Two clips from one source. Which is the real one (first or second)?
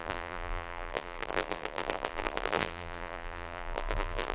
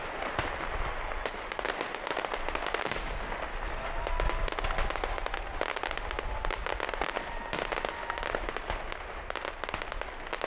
second